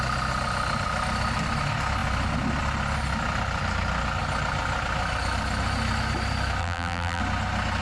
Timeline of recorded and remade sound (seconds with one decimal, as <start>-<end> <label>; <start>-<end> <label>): 0.0-6.6 recorded; 6.6-7.2 remade; 7.2-7.8 recorded